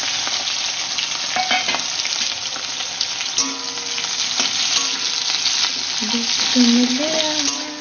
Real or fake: real